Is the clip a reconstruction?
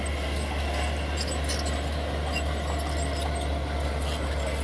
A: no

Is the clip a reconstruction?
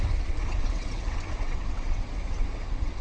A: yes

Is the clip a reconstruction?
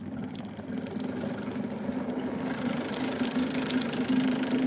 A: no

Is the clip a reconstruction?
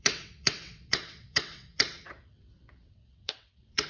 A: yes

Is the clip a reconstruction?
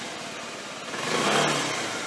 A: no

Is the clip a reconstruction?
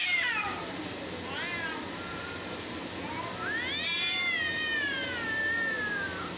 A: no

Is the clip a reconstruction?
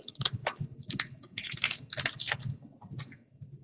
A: no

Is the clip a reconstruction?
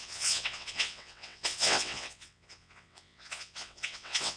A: yes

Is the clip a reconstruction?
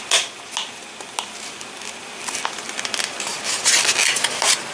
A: no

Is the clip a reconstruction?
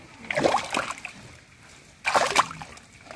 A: no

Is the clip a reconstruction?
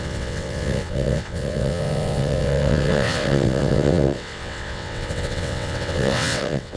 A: yes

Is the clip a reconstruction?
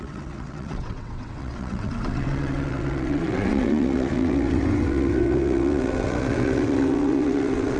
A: yes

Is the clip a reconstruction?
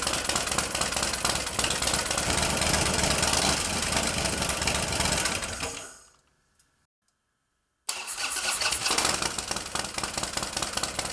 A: no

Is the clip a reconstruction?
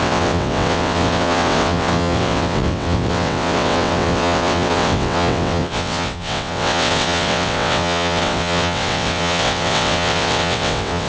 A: yes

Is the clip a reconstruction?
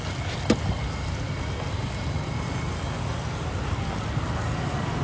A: no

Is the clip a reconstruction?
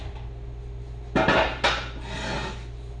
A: no